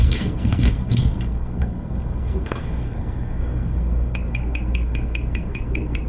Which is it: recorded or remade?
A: remade